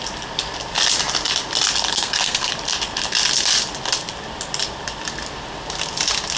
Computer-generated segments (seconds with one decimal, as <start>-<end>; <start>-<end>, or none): 1.9-2.5